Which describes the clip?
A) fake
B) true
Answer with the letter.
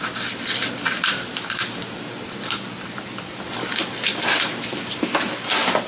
B